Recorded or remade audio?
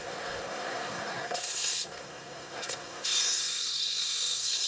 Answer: remade